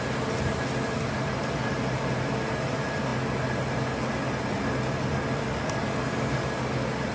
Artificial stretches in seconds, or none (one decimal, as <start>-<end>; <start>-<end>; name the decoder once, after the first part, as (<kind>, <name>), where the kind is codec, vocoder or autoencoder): none